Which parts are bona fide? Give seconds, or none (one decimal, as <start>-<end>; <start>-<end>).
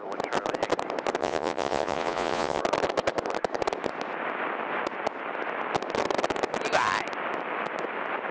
0.0-1.2; 2.6-8.3